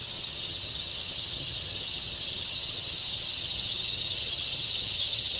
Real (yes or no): no